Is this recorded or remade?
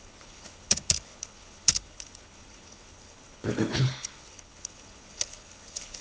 remade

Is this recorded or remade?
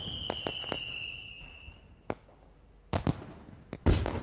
recorded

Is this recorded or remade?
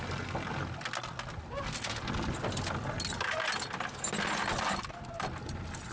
recorded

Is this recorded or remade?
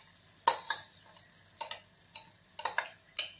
recorded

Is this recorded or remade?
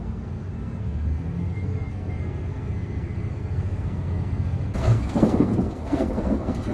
remade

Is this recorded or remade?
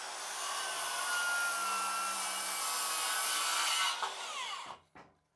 recorded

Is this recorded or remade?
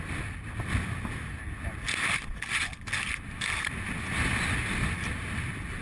recorded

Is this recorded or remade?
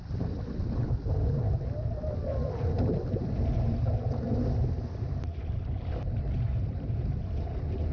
recorded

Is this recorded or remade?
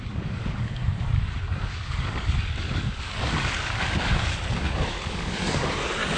remade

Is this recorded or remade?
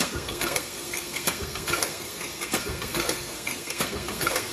remade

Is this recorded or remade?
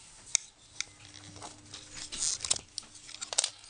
recorded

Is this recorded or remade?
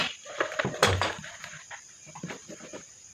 recorded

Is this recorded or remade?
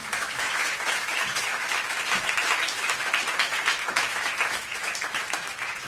remade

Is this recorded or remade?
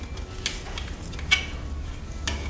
recorded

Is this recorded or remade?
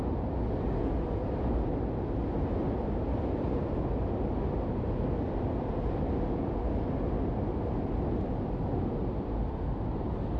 recorded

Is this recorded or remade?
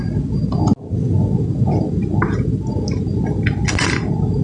recorded